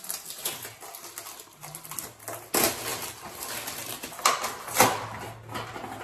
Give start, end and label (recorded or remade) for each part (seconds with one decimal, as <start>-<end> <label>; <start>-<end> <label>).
0.0-2.9 recorded; 2.9-3.6 remade; 3.6-6.0 recorded